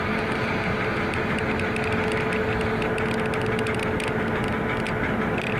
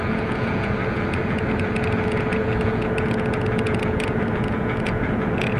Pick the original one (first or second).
first